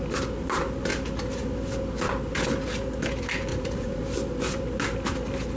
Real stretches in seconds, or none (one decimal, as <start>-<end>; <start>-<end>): 0.0-3.5; 4.0-5.6